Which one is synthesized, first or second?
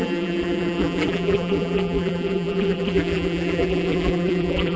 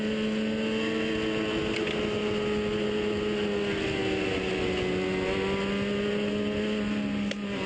first